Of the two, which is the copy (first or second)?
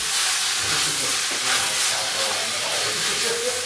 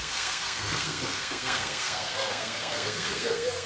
second